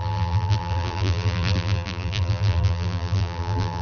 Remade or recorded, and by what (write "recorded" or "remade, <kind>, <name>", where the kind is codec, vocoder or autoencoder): remade, vocoder, BigVGAN v2